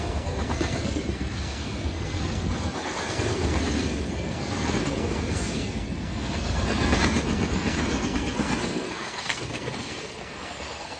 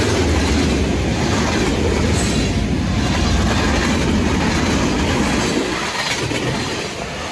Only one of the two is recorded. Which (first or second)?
second